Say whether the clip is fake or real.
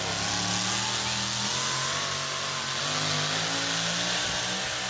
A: real